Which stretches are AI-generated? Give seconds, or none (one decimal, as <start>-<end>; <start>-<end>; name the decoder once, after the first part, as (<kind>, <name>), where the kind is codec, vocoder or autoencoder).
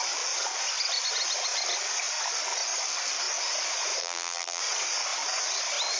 4.0-4.6 (vocoder, BigVGAN v2)